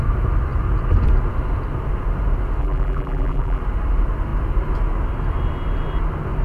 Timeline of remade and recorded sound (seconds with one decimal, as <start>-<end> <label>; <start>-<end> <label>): 0.0-2.6 recorded; 2.6-3.6 remade; 3.6-6.4 recorded